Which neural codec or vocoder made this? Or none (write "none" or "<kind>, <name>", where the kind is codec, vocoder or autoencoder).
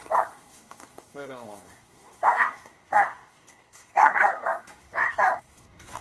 codec, SNAC